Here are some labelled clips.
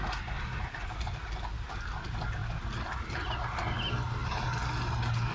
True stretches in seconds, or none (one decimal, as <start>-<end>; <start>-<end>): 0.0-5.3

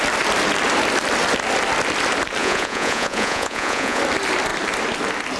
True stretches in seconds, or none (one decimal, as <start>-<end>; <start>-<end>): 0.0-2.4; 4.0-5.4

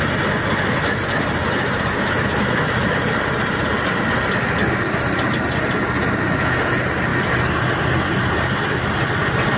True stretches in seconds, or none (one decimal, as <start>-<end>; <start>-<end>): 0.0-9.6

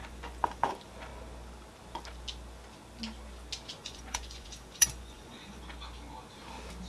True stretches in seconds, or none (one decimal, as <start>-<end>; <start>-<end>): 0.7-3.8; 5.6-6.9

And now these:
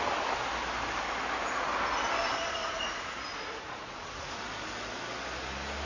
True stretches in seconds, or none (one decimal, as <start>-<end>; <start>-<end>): 0.0-2.6; 4.4-5.9

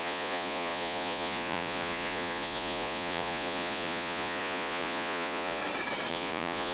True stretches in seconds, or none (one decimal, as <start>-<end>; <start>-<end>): 5.6-6.1

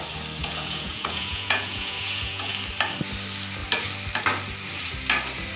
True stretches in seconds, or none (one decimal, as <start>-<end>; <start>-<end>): 0.0-0.4; 2.5-5.6

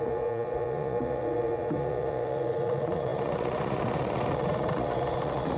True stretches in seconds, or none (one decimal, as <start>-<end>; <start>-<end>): none